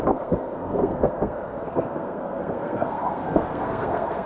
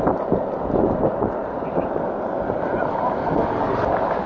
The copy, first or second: first